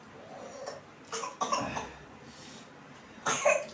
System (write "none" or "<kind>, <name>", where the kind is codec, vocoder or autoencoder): none